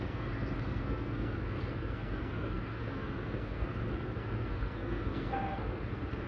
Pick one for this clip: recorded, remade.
remade